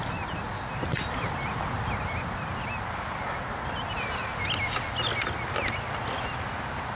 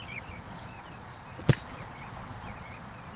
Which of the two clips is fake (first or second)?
second